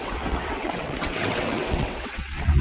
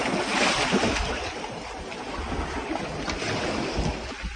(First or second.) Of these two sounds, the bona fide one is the second